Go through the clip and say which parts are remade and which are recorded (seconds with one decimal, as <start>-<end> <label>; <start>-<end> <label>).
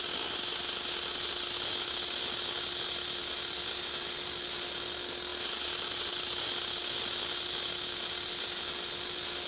0.0-5.3 recorded; 5.3-6.6 remade; 6.6-9.5 recorded